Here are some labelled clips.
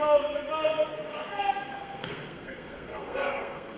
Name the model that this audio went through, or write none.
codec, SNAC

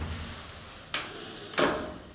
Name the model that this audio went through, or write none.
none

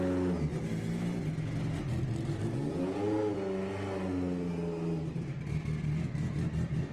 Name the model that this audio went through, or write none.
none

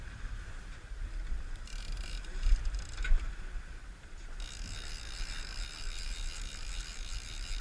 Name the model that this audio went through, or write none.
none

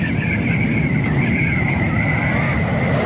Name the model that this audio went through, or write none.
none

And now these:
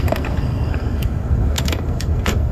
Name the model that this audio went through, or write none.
codec, SNAC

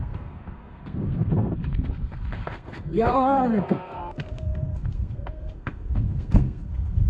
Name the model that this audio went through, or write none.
codec, SNAC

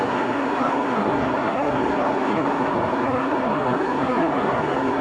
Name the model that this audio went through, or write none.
codec, SNAC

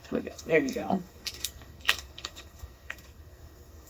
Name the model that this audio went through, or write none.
codec, SNAC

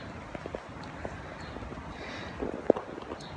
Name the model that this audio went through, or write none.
none